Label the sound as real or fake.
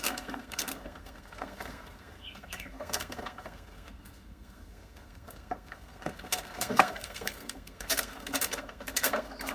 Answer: fake